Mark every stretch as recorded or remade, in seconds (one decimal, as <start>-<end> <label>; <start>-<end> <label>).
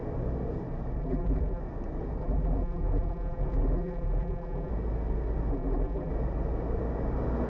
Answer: 0.0-1.0 recorded; 1.0-1.6 remade; 1.6-2.2 recorded; 2.2-4.7 remade; 4.7-5.5 recorded; 5.5-6.1 remade; 6.1-7.5 recorded